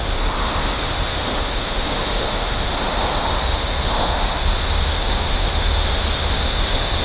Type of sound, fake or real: fake